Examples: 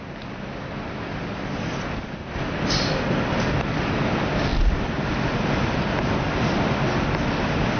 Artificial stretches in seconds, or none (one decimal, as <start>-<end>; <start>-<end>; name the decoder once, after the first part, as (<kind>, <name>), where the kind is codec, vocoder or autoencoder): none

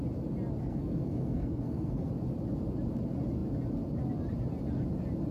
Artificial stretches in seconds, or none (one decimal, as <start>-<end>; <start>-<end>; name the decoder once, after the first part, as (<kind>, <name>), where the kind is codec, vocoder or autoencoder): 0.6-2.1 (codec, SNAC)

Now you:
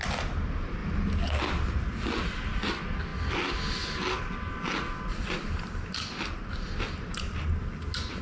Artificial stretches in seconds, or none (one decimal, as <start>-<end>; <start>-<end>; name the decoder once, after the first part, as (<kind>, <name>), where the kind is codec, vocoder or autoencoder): none

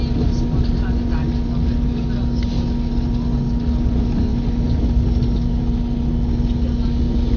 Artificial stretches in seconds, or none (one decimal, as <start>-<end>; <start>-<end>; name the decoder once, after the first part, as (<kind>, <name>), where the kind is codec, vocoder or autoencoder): none

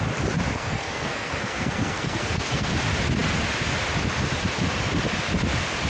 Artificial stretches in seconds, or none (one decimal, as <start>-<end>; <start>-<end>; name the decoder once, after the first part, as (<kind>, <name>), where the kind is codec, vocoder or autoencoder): 0.5-2.7 (codec, SNAC)

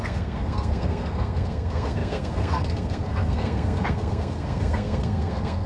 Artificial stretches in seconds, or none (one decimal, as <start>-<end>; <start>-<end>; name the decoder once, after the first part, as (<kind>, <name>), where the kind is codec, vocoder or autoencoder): 0.0-5.7 (codec, SNAC)

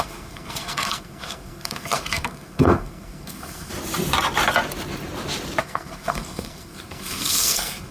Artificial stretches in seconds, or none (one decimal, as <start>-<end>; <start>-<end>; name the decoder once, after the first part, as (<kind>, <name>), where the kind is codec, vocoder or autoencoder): 0.0-3.7 (codec, SNAC); 5.6-7.9